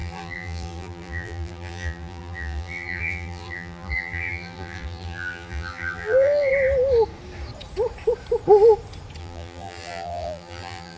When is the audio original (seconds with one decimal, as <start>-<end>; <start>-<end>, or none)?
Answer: 6.5-9.2